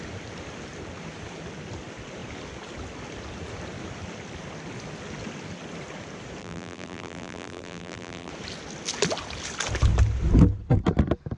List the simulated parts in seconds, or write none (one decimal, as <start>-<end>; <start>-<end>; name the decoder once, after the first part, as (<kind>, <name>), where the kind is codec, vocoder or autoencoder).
6.4-8.3 (vocoder, BigVGAN v2)